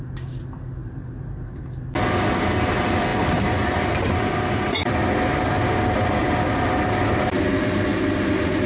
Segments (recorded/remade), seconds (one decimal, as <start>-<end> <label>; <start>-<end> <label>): 0.0-8.7 recorded